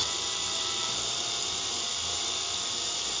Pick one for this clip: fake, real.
fake